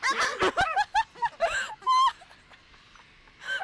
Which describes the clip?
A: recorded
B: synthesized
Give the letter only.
A